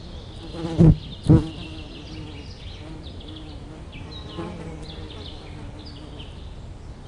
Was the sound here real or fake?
real